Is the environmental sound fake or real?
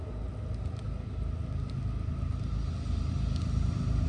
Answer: real